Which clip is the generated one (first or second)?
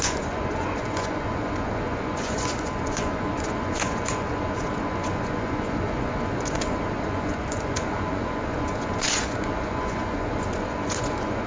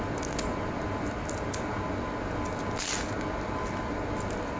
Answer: first